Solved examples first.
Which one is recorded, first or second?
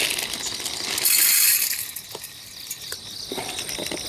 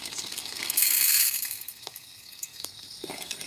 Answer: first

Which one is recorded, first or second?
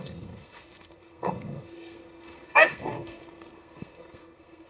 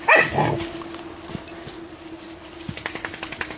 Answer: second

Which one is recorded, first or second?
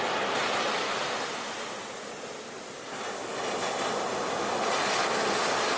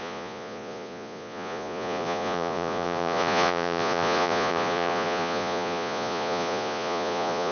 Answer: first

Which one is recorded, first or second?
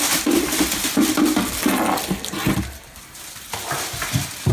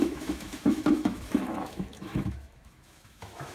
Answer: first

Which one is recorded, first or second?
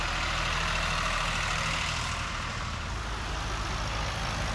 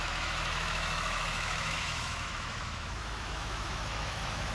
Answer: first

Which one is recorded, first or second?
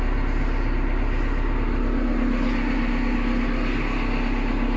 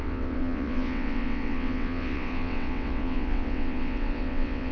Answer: first